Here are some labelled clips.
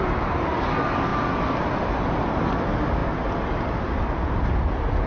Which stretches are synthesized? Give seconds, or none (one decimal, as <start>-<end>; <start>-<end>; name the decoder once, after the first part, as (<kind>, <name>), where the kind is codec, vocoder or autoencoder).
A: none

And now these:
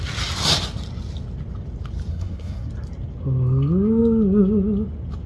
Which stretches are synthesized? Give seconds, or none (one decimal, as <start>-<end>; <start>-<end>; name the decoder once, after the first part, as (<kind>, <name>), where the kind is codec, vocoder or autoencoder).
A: 2.1-2.7 (codec, SNAC)

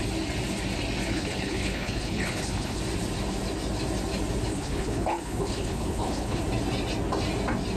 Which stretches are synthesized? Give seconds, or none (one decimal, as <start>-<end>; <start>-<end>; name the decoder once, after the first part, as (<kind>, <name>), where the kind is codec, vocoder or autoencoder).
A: 1.1-2.8 (codec, HILCodec); 4.5-6.4